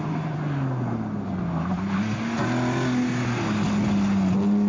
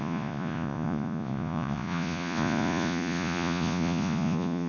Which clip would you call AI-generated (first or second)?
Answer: second